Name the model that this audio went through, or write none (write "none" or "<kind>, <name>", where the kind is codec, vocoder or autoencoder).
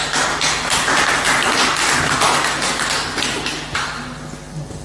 none